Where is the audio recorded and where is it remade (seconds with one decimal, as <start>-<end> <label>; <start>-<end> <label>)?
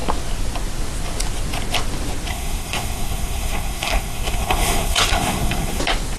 0.0-2.3 recorded; 2.3-5.8 remade; 5.8-6.2 recorded